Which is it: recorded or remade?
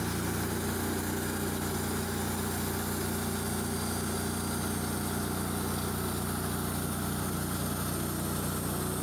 recorded